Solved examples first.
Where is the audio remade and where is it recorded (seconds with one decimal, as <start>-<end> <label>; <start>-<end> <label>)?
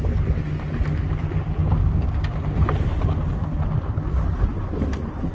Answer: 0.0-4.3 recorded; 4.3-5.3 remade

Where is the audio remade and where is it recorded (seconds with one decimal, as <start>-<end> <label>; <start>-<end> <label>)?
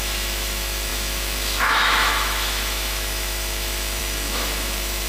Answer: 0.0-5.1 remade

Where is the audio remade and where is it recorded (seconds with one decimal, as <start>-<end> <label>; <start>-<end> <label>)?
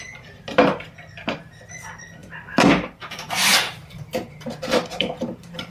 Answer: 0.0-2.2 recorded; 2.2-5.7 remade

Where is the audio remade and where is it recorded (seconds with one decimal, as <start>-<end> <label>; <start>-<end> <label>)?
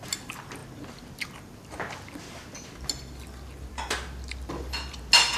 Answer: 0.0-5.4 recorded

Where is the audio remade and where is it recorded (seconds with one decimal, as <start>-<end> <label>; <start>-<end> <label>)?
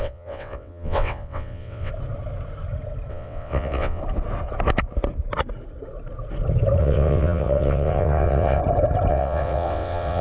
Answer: 0.0-1.9 remade; 1.9-3.1 recorded; 3.1-4.0 remade; 4.0-6.8 recorded; 6.8-8.6 remade; 8.6-9.1 recorded; 9.1-10.2 remade